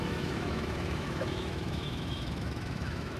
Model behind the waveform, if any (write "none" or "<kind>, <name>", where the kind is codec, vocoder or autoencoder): autoencoder, DAC-VAE